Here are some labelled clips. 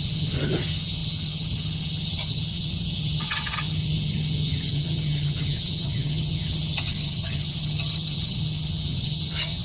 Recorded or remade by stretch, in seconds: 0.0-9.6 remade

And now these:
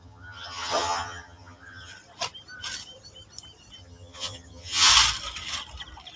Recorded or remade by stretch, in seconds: 0.0-1.9 remade; 1.9-3.8 recorded; 3.8-4.9 remade; 4.9-6.2 recorded